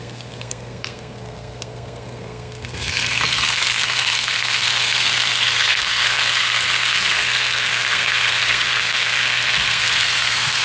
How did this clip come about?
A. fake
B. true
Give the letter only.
A